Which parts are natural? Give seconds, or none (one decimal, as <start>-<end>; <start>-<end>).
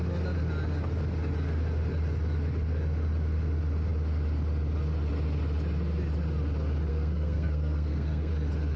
0.0-6.9; 8.3-8.8